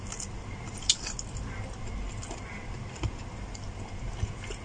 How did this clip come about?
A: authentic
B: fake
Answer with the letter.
A